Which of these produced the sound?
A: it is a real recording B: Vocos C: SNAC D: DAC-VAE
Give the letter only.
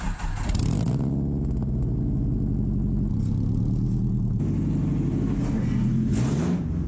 A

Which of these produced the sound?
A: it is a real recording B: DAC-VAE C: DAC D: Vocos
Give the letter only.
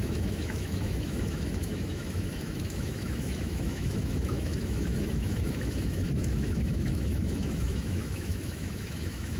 B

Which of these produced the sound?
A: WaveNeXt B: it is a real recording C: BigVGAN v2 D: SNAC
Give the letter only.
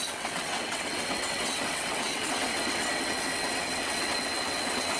A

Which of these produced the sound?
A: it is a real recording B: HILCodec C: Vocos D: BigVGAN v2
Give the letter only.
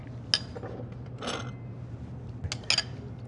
A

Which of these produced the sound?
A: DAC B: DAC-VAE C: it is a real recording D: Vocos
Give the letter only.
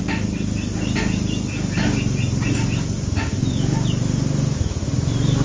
C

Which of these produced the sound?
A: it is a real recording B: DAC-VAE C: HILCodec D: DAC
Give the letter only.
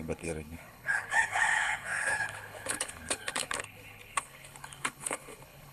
C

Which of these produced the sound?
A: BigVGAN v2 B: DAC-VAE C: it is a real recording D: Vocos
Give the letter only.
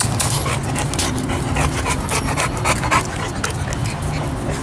C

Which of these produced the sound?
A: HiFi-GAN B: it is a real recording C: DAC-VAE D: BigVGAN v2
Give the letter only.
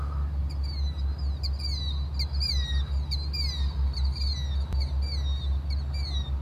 B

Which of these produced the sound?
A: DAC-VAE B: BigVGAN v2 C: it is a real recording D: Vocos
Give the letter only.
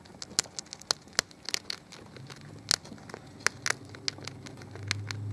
C